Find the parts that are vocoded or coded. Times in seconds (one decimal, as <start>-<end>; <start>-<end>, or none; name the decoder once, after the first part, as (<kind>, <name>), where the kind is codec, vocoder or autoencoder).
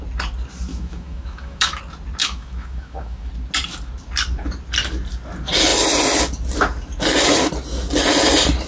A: 0.7-1.8 (autoencoder, DAC-VAE); 2.2-3.3